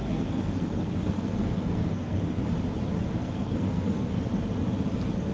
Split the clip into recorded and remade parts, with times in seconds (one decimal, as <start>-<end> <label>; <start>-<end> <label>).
0.0-2.5 remade; 2.5-3.2 recorded; 3.2-4.3 remade; 4.3-5.3 recorded